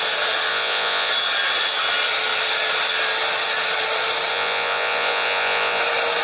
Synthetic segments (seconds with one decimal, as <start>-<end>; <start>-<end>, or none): 0.5-1.1; 4.3-5.8